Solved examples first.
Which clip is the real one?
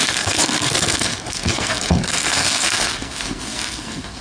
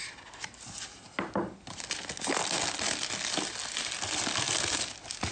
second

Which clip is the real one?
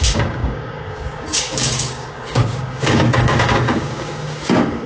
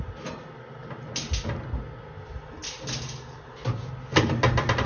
second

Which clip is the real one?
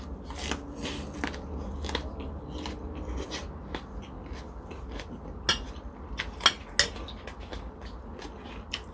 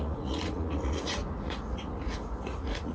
first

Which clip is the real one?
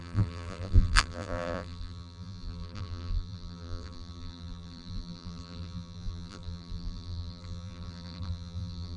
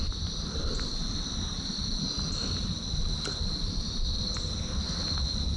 second